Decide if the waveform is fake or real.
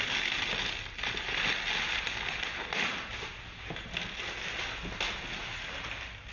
real